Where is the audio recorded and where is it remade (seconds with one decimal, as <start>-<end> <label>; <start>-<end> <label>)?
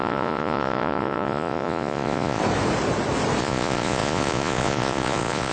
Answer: 0.0-2.4 remade; 2.4-3.4 recorded; 3.4-5.5 remade